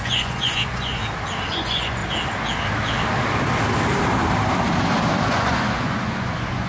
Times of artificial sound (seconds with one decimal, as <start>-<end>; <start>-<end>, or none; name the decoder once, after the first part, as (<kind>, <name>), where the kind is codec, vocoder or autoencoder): 0.0-1.0 (vocoder, Vocos); 1.5-2.0; 5.3-6.7